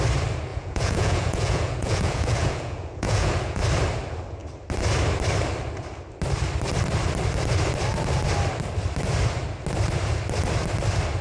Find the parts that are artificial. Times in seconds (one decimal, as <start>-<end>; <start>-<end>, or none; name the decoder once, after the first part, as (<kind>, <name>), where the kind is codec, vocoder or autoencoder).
0.5-3.6 (vocoder, Vocos)